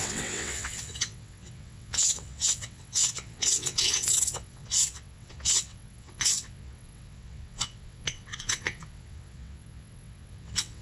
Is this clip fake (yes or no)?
yes